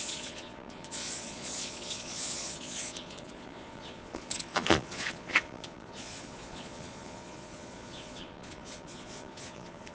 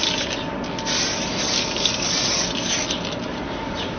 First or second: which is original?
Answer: second